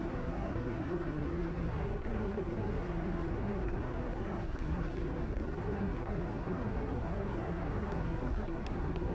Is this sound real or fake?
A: fake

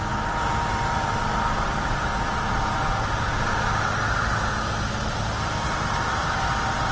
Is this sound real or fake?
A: real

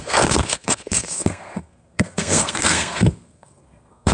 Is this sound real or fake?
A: fake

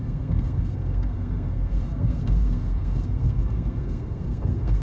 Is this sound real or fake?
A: fake